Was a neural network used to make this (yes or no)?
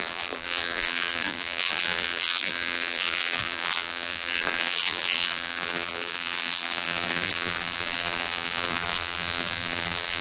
yes